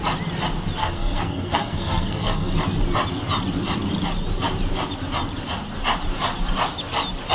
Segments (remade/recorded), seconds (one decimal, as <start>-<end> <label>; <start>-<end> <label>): 0.0-0.8 recorded; 0.8-2.5 remade; 2.5-7.3 recorded